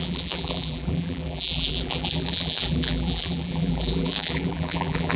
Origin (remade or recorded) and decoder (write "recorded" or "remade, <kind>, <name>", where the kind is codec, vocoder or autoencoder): remade, vocoder, BigVGAN v2